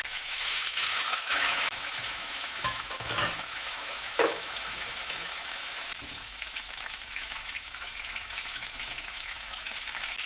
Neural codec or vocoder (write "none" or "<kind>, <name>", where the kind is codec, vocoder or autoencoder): autoencoder, DAC-VAE